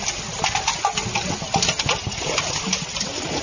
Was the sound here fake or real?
real